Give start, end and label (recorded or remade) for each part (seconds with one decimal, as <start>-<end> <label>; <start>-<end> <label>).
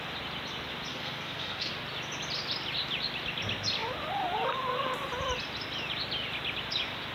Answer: 0.0-0.9 recorded; 0.9-1.7 remade; 1.7-7.1 recorded